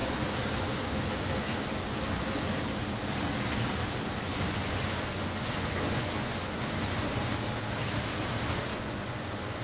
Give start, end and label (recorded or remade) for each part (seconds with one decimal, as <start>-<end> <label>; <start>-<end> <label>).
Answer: 0.0-2.6 remade; 2.6-4.3 recorded; 4.3-7.3 remade; 7.3-8.7 recorded; 8.7-9.6 remade